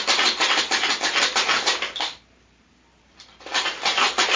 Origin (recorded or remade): recorded